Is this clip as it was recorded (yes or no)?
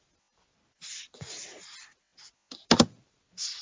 yes